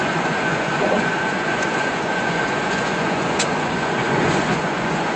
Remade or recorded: remade